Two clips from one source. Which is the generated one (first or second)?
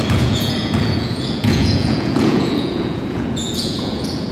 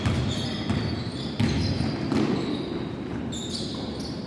first